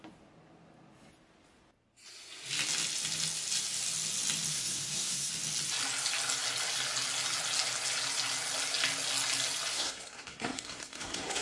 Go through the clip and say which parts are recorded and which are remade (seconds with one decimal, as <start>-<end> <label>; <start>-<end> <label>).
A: 0.0-4.5 recorded; 4.5-5.3 remade; 5.3-9.7 recorded; 9.7-11.4 remade